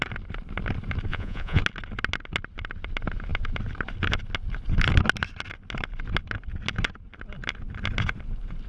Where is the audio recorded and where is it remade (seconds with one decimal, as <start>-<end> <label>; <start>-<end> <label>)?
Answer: 0.0-1.1 recorded; 1.1-1.6 remade; 1.6-8.7 recorded